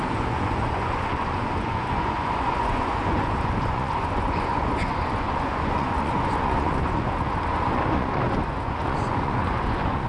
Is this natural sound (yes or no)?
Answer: no